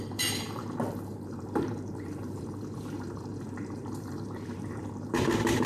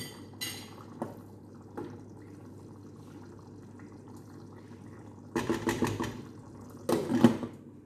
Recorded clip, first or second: second